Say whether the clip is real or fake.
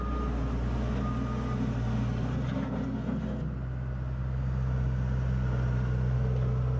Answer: real